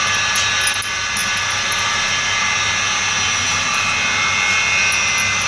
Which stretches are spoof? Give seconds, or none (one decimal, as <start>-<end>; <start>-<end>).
none